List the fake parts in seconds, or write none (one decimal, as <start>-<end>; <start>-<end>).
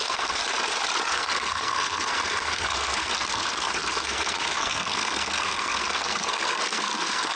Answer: 0.0-0.4; 1.1-7.4